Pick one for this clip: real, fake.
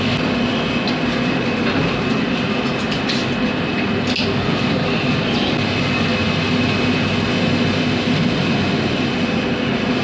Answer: real